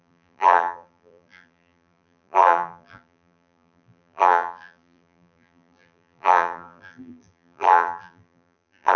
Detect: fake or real fake